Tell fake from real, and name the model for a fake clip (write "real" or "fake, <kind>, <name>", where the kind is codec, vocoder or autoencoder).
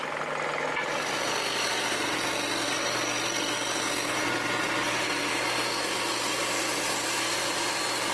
real